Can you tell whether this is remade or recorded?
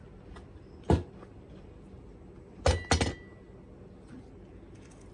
recorded